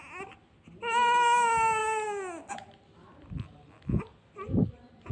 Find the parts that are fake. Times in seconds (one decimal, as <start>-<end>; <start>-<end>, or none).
none